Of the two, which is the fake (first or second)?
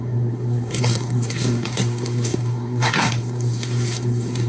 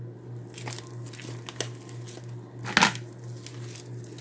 first